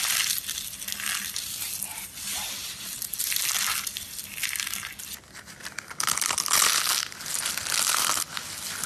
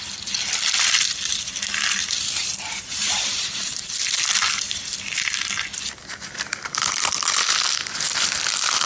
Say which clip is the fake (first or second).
second